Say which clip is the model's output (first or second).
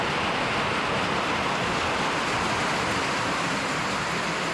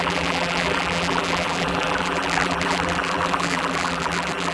second